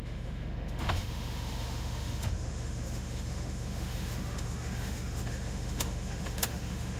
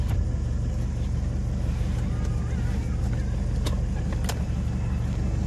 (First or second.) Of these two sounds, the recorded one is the second